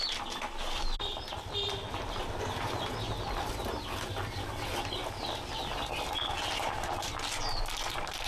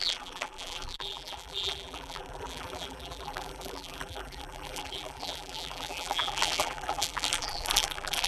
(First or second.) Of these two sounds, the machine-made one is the second